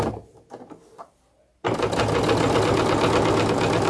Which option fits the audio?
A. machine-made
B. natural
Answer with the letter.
B